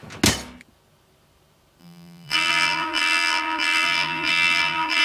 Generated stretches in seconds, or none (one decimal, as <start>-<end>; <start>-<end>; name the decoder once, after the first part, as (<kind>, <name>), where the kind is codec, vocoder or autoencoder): 1.8-5.0 (vocoder, BigVGAN v2)